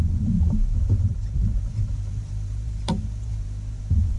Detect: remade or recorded remade